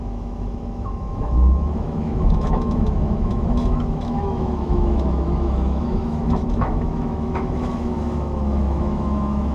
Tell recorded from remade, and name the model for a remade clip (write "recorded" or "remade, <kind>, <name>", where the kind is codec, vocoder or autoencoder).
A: remade, autoencoder, DAC-VAE